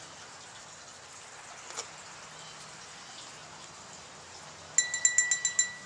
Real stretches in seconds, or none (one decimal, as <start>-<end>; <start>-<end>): 0.0-5.9